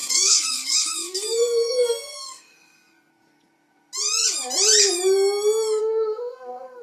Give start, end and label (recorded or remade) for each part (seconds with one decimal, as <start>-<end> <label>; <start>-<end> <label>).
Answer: 0.0-3.1 remade; 3.1-5.8 recorded; 5.8-6.8 remade